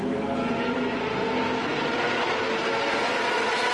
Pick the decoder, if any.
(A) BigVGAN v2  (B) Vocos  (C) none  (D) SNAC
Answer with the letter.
C